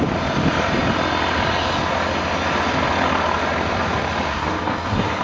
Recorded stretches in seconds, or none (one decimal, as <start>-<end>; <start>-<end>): 0.0-4.3